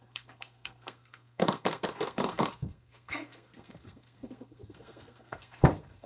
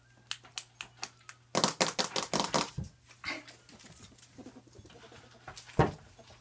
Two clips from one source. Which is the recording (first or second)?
second